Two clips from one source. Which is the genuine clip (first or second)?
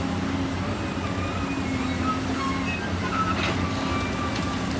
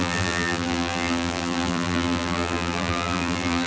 first